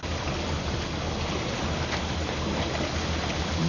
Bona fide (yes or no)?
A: yes